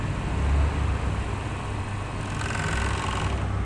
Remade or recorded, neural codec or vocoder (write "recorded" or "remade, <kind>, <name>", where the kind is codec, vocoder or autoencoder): recorded